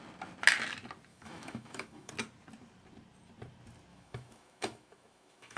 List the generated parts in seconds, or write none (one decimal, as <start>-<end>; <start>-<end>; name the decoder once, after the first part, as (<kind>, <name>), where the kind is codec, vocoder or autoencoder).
1.1-2.1 (autoencoder, DAC-VAE); 3.9-5.6